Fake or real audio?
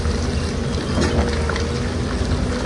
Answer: real